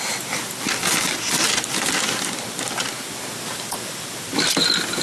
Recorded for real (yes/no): yes